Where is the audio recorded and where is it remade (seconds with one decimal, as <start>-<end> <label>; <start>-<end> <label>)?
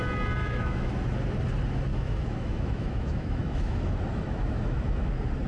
0.0-0.4 recorded; 0.4-0.9 remade; 0.9-1.9 recorded; 1.9-5.1 remade; 5.1-5.5 recorded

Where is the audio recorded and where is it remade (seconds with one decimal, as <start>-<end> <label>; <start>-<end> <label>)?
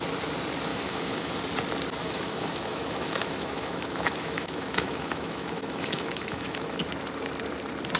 0.0-0.7 recorded; 0.7-1.4 remade; 1.4-2.0 recorded; 2.0-6.8 remade; 6.8-8.0 recorded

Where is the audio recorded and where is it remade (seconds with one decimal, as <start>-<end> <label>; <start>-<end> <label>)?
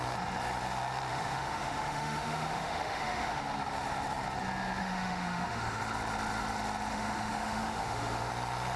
0.0-1.1 recorded; 1.1-3.4 remade; 3.4-4.8 recorded; 4.8-5.8 remade; 5.8-6.9 recorded; 6.9-8.3 remade; 8.3-8.8 recorded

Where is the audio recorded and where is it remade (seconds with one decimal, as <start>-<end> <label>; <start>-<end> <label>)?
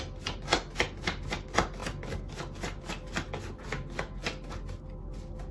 0.0-5.5 recorded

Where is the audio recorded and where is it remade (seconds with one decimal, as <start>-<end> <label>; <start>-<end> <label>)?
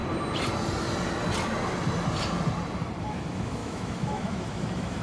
0.0-3.0 recorded; 3.0-5.0 remade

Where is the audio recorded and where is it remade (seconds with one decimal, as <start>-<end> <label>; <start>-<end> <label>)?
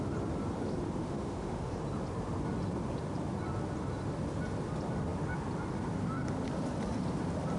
0.0-1.0 recorded; 1.0-1.7 remade; 1.7-7.6 recorded